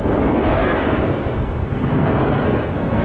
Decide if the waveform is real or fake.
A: fake